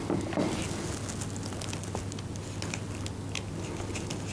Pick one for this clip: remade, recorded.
recorded